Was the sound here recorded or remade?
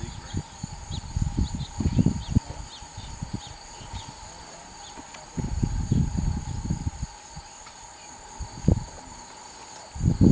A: recorded